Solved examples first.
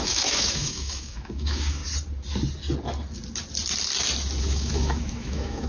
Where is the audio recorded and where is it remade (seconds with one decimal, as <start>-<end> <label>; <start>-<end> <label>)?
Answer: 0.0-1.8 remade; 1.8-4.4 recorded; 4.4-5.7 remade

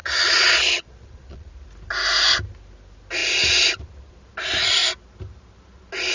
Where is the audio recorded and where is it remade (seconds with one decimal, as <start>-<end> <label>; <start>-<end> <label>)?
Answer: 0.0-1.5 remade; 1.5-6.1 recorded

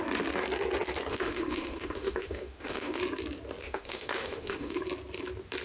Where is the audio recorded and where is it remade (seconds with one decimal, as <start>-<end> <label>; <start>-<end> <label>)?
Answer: 0.0-1.1 recorded; 1.1-3.0 remade; 3.0-3.6 recorded; 3.6-4.8 remade; 4.8-5.6 recorded